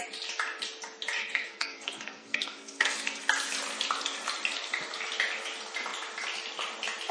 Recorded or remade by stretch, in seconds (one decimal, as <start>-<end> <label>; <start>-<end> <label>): 0.0-1.2 recorded; 1.2-3.2 remade; 3.2-7.1 recorded